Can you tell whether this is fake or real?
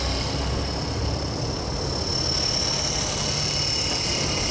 real